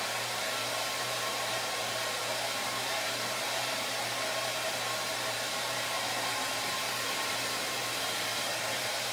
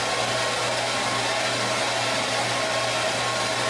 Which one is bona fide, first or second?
second